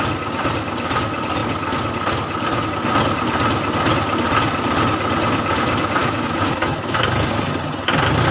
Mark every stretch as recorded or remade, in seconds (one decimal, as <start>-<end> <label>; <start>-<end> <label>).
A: 0.0-6.0 recorded; 6.0-7.0 remade; 7.0-8.3 recorded